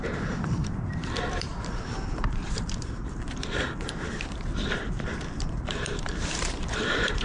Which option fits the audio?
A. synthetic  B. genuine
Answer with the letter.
A